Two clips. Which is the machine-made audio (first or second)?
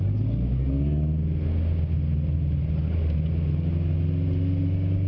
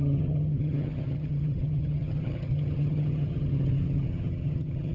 second